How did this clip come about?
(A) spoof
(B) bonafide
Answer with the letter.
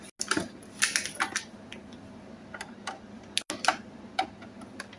B